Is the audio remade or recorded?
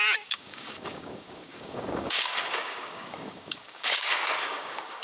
remade